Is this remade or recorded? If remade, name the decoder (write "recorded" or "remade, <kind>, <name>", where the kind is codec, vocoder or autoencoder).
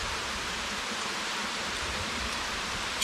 remade, vocoder, BigVGAN v2